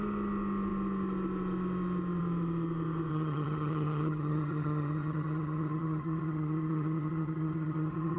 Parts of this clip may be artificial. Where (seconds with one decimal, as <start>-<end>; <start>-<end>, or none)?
3.1-8.2